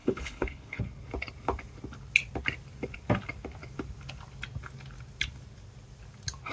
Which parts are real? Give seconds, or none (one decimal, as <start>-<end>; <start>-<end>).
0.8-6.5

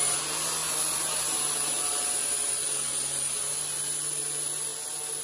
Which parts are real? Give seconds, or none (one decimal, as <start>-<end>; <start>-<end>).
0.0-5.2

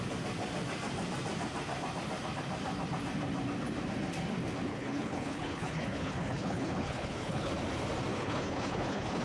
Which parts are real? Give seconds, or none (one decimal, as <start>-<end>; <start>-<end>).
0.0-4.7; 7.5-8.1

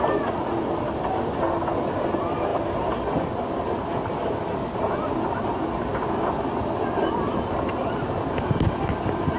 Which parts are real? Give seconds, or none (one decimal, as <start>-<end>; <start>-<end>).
0.0-9.4

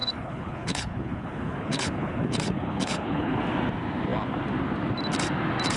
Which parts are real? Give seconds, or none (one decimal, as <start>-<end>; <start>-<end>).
3.4-5.8

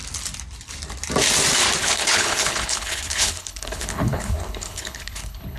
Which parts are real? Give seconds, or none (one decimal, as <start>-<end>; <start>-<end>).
0.0-1.8

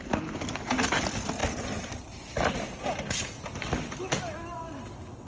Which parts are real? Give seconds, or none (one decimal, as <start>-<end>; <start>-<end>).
0.0-5.3

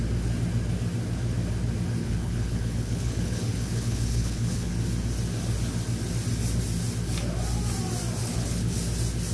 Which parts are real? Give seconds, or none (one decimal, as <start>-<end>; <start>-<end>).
0.0-2.0; 4.7-8.2; 8.8-9.3